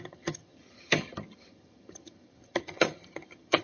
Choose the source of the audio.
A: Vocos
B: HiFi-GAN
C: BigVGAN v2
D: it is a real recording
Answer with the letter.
B